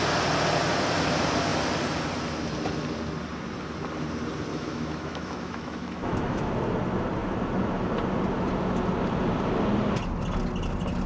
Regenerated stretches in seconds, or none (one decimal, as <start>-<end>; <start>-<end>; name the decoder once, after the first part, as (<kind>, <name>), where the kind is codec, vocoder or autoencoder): 4.5-6.5 (autoencoder, DAC-VAE)